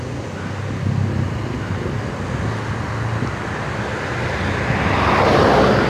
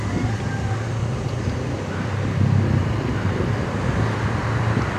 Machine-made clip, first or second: second